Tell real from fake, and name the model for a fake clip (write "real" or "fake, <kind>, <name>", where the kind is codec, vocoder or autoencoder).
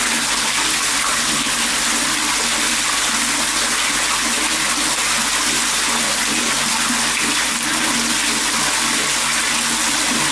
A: real